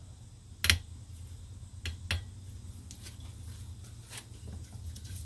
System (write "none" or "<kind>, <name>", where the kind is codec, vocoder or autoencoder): none